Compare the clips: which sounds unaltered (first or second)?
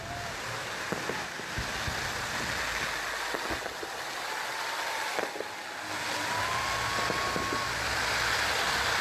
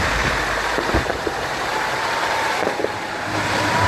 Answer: first